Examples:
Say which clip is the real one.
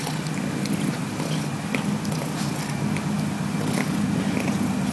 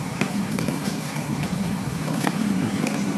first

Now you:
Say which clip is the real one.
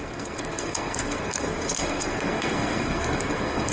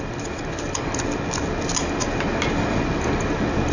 second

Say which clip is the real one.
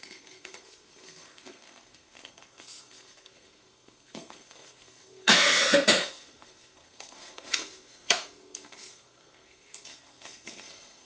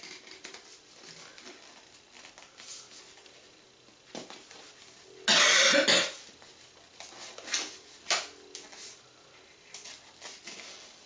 second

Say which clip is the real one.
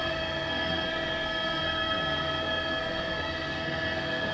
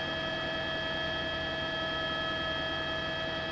second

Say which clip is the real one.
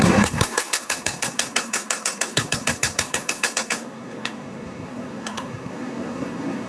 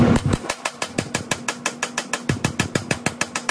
second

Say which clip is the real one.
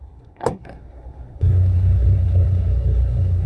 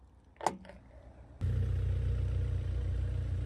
second